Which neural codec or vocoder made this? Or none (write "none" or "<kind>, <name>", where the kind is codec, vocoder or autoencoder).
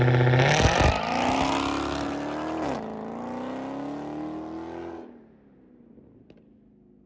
none